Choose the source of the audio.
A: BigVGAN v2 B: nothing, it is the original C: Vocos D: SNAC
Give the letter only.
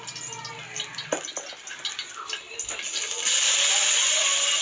B